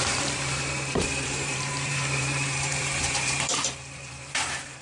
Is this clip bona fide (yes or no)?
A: no